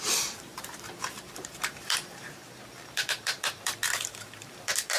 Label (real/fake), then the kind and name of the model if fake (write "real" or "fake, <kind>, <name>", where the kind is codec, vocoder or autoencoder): fake, vocoder, BigVGAN v2